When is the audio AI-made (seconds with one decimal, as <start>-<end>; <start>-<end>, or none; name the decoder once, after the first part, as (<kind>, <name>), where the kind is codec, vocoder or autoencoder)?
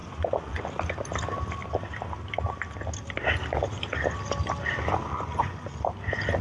0.0-0.6 (vocoder, Vocos); 5.0-5.8